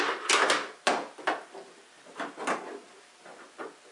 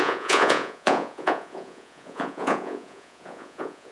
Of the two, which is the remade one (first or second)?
second